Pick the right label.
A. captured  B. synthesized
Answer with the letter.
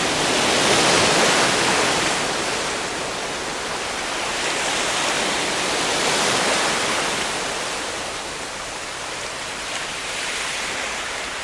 A